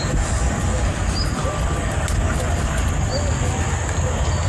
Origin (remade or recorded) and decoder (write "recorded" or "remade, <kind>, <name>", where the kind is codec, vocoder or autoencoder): recorded